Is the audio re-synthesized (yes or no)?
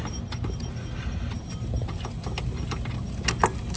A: no